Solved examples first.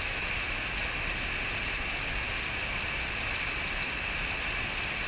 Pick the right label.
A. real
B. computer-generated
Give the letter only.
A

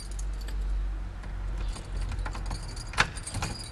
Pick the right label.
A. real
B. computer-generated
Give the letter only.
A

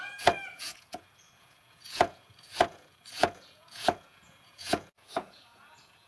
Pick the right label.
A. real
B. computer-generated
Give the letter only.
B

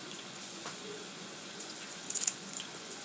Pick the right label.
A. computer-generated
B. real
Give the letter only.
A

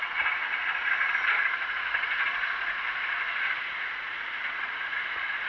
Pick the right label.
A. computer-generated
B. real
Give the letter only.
A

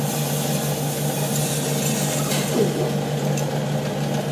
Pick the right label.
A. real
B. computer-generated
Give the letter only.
A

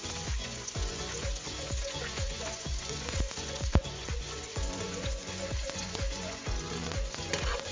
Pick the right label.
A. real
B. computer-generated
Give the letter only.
B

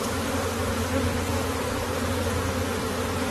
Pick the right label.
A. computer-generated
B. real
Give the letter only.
B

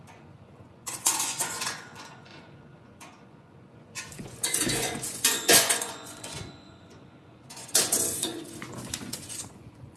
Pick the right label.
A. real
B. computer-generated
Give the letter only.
B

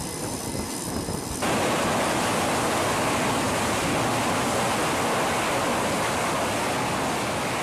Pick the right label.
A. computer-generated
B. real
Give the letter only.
B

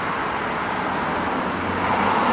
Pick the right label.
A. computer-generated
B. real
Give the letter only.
B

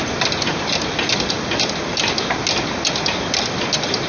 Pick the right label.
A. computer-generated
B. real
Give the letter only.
B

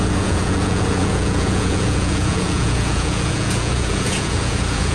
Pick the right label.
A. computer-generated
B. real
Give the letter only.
A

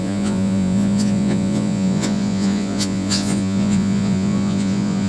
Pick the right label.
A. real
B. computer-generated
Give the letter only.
B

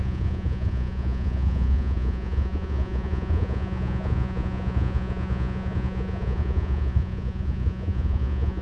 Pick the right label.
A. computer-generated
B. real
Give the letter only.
A